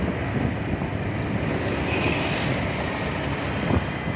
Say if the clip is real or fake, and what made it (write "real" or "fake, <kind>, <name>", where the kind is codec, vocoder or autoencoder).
real